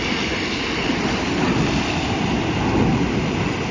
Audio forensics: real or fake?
real